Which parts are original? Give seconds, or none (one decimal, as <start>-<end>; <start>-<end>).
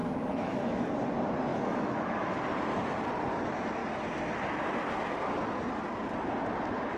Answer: 0.9-1.5; 2.4-7.0